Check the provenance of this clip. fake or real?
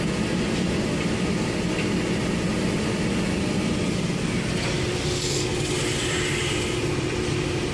real